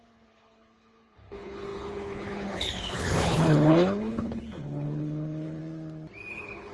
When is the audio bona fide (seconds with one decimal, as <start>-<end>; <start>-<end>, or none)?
5.6-6.3